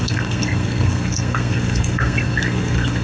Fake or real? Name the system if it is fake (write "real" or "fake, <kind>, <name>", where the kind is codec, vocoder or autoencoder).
fake, codec, SNAC